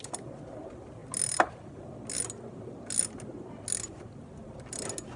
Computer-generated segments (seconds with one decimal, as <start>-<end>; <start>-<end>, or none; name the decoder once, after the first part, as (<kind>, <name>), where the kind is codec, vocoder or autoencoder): none